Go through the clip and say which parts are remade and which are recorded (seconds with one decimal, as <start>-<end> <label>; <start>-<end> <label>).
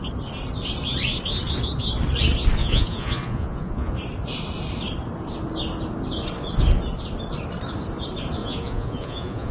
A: 0.0-2.6 recorded; 2.6-3.9 remade; 3.9-8.4 recorded; 8.4-9.5 remade